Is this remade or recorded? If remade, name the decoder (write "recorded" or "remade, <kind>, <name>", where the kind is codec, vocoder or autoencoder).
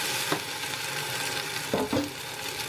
recorded